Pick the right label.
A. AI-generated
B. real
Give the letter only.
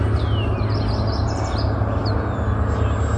B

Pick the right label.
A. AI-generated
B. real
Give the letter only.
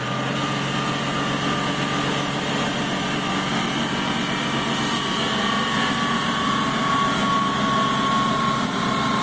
B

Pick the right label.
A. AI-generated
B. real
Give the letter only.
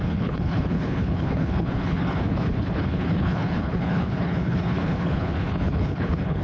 A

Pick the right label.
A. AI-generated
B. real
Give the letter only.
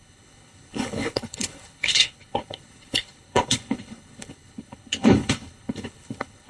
A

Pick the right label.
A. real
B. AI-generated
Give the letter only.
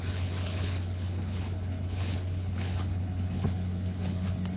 B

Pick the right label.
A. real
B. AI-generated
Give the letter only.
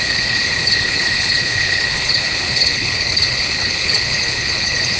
B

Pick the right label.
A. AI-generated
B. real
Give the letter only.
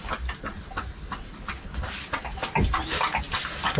B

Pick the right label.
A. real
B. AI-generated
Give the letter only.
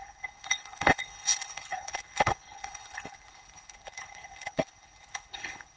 B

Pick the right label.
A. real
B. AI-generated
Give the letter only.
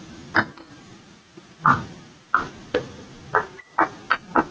A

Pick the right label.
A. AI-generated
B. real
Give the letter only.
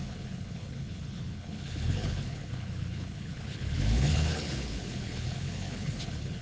A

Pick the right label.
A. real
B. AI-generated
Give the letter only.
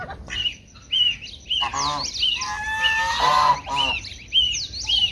A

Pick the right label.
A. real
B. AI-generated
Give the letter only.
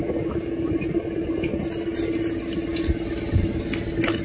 A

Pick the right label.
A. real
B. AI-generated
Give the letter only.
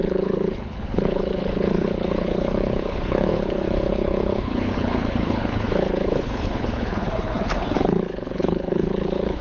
B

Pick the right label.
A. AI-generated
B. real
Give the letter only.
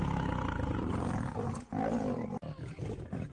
B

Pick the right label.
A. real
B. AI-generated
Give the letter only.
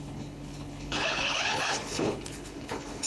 B